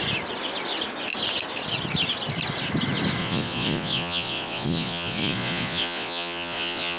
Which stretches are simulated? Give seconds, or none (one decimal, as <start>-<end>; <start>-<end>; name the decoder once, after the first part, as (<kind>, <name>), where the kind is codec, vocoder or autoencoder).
3.2-7.0 (vocoder, Vocos)